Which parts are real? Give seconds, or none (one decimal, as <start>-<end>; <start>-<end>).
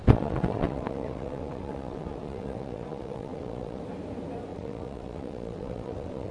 3.8-4.5